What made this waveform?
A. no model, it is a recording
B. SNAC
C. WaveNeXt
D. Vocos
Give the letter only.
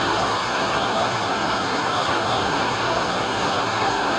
B